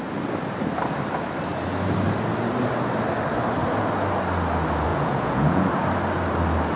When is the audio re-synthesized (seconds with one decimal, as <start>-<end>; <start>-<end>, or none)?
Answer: 4.9-5.7